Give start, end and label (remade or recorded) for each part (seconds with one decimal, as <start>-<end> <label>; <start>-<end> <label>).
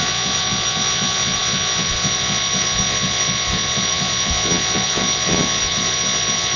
0.0-6.6 remade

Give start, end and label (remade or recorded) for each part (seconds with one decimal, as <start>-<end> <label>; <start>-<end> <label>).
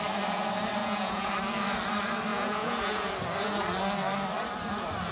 0.0-0.8 recorded; 0.8-1.3 remade; 1.3-2.3 recorded; 2.3-3.1 remade; 3.1-5.1 recorded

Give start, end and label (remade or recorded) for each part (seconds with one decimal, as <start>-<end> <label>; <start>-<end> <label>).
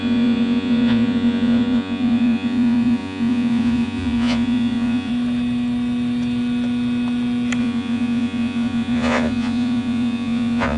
0.0-5.1 remade; 5.1-7.6 recorded; 7.6-10.8 remade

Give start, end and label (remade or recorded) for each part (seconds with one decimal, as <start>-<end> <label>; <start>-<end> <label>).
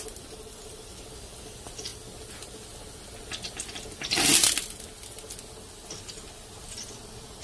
0.0-7.4 recorded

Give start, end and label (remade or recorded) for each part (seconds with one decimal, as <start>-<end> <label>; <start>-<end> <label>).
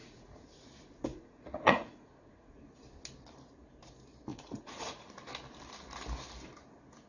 0.0-0.7 remade; 0.7-1.1 recorded; 1.1-2.5 remade; 2.5-4.3 recorded; 4.3-5.1 remade; 5.1-7.1 recorded